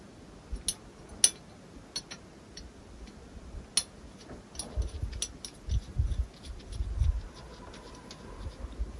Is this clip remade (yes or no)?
no